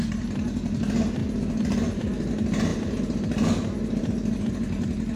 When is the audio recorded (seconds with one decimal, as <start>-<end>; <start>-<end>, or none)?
0.0-1.2; 2.3-5.2